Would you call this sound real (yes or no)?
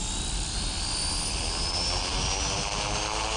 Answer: yes